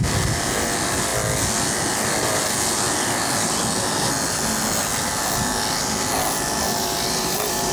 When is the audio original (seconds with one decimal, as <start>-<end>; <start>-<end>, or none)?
0.0-6.7

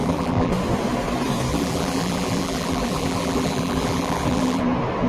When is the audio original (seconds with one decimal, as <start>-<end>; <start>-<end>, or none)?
0.5-1.5; 4.6-5.1